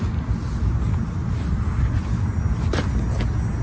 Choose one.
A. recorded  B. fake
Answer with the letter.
A